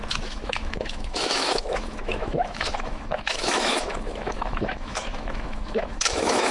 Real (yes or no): no